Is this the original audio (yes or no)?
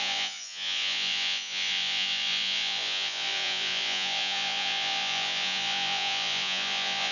no